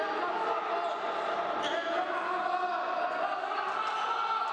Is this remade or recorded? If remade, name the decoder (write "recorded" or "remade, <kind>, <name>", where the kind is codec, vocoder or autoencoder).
recorded